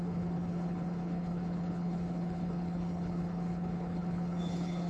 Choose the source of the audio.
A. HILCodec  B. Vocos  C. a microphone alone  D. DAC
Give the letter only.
A